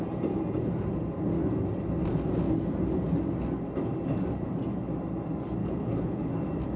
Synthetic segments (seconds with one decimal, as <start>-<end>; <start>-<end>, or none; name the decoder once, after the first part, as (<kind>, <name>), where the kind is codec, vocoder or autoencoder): 5.6-6.3 (codec, HILCodec)